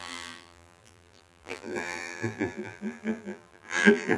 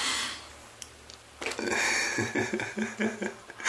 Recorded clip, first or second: second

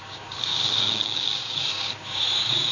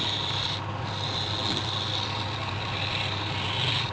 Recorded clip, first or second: second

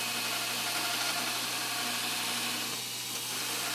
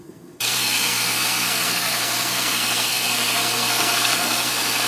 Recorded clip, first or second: first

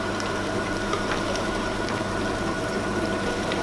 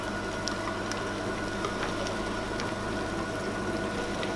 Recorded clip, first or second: second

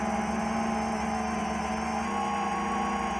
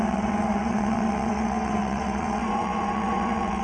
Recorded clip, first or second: first